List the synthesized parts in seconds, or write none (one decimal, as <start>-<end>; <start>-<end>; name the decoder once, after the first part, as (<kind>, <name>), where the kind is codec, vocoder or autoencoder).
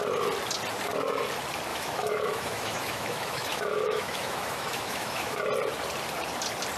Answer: 1.7-5.4 (autoencoder, DAC-VAE)